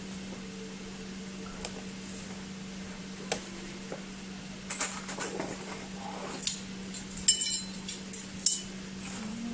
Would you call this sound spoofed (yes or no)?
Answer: no